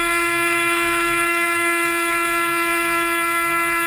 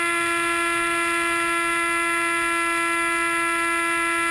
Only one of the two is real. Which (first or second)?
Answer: second